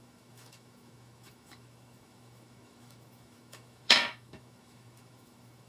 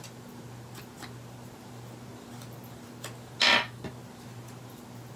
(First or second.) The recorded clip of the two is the second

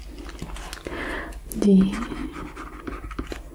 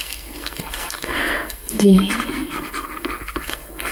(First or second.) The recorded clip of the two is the first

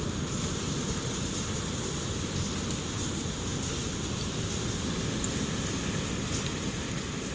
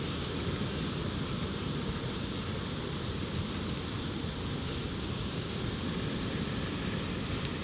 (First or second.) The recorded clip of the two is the first